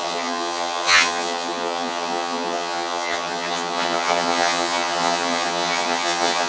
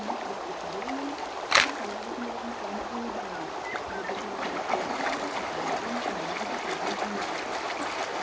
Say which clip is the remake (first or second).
first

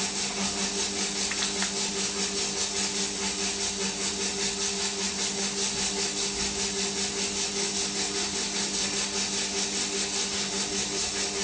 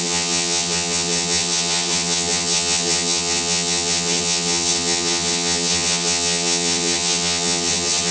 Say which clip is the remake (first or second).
second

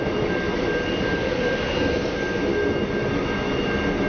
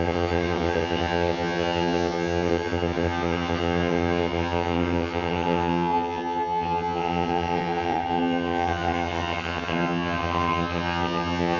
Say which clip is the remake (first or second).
second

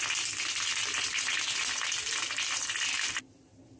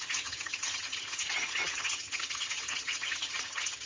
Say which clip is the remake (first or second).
second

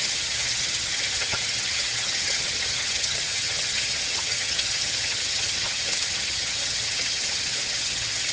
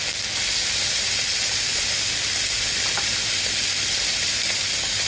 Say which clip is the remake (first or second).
first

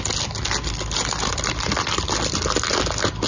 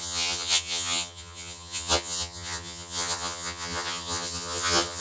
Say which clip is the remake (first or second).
second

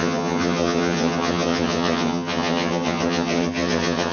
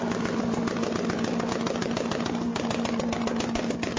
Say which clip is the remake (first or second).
first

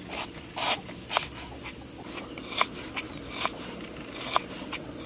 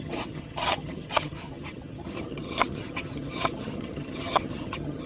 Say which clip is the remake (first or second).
second